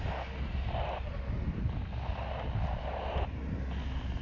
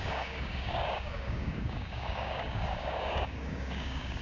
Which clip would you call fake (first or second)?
second